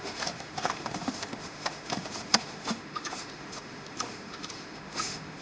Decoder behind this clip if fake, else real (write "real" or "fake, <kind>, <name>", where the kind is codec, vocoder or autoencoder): fake, autoencoder, DAC-VAE